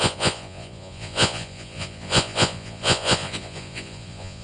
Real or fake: fake